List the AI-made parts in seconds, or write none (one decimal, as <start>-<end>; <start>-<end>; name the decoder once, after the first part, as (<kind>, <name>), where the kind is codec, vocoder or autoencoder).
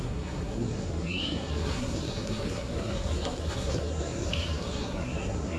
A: 0.0-5.6 (codec, SNAC)